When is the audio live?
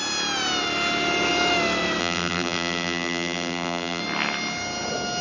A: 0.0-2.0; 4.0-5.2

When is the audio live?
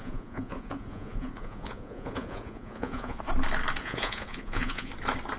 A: 3.2-3.8; 4.9-5.4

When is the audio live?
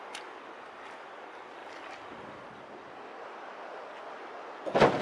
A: 0.0-5.0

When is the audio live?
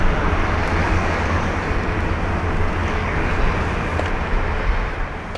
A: 0.0-0.8; 1.4-2.8; 3.4-5.4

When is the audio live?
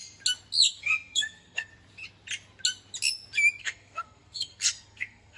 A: 0.0-0.8; 1.7-3.6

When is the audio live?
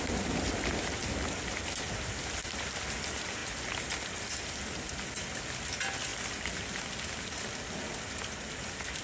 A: 0.0-9.0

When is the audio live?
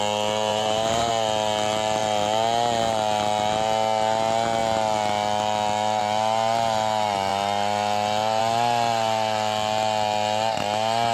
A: 0.0-0.5; 1.1-11.1